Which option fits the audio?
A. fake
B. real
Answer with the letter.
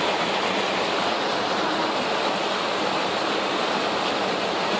B